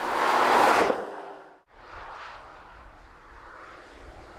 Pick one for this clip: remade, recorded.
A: recorded